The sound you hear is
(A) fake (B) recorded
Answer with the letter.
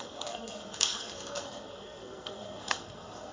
A